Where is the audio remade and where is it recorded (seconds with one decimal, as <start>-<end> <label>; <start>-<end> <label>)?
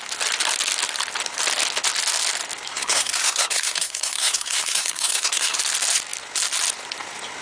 0.0-2.7 recorded; 2.7-5.6 remade; 5.6-7.4 recorded